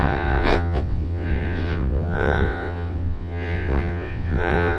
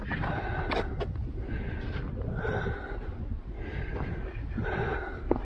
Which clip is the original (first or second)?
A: second